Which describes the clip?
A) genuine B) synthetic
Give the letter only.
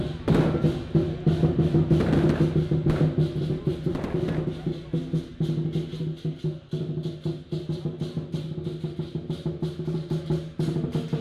A